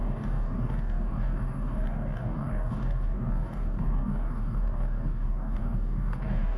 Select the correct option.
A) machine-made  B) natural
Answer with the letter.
A